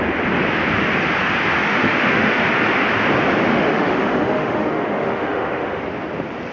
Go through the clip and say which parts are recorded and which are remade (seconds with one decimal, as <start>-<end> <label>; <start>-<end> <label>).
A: 0.0-1.6 recorded; 1.6-2.5 remade; 2.5-3.5 recorded; 3.5-5.8 remade; 5.8-6.5 recorded